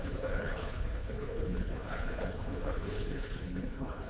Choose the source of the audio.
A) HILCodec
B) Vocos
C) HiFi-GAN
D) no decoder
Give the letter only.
A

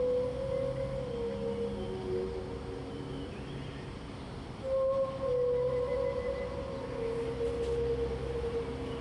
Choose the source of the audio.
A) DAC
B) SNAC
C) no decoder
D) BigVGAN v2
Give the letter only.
C